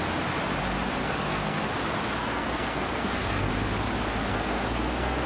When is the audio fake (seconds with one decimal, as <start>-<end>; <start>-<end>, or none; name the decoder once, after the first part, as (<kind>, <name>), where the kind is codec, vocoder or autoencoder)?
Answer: 1.0-1.7 (codec, SNAC); 2.2-3.5; 4.3-5.3

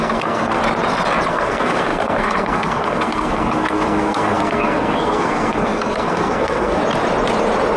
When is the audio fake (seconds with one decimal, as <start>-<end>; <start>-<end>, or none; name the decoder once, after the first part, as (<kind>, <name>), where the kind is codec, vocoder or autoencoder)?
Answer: 0.0-0.6 (codec, SNAC); 1.3-6.8

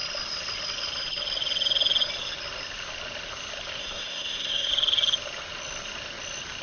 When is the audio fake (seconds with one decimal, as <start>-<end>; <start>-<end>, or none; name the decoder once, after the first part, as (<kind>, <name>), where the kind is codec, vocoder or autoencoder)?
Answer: 3.8-4.7 (codec, SNAC)

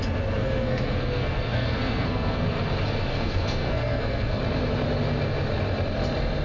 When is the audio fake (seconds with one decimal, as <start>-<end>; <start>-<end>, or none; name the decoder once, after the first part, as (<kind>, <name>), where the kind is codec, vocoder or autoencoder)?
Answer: 0.4-2.5 (codec, SNAC); 3.1-4.4

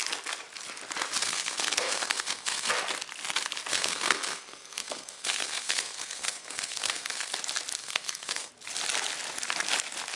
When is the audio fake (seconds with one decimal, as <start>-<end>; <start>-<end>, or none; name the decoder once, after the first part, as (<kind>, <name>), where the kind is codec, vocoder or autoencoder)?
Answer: 1.2-2.7 (codec, SNAC); 3.7-7.3; 7.8-8.5